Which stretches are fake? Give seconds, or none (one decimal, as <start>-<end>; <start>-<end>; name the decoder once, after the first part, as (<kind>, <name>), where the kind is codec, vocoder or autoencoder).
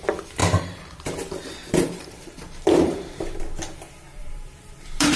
0.4-1.1 (vocoder, BigVGAN v2); 1.6-3.4; 4.2-5.2